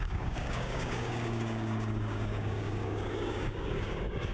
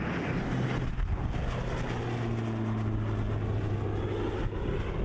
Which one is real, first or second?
second